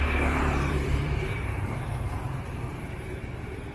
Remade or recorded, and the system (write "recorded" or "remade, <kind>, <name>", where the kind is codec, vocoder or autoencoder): remade, vocoder, BigVGAN v2